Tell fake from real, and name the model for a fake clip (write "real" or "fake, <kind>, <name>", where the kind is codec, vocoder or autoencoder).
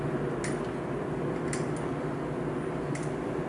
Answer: real